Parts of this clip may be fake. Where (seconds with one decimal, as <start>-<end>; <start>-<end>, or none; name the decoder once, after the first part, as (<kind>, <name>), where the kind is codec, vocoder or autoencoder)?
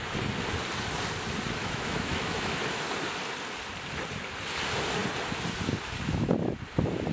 1.6-2.6 (autoencoder, DAC-VAE)